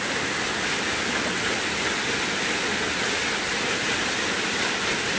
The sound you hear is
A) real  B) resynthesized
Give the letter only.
A